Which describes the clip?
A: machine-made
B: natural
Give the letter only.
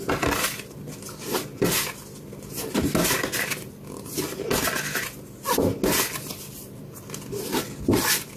B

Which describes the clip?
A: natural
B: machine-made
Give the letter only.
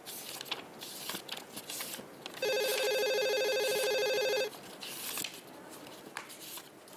A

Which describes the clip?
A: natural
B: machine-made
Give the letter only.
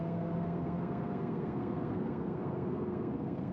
B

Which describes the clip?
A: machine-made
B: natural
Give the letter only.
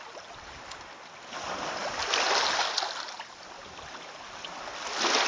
B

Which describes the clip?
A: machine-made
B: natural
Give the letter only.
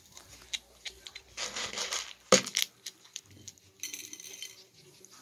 B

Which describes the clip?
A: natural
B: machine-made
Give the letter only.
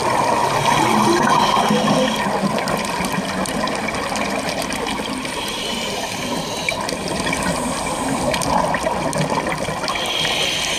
A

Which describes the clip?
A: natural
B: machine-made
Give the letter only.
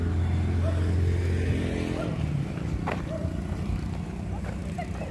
A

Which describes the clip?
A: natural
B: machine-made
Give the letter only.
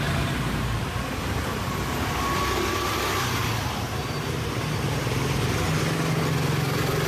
A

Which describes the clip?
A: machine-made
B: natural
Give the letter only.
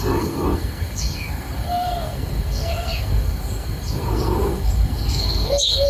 A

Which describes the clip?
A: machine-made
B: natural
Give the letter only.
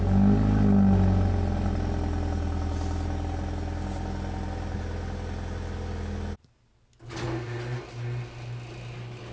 B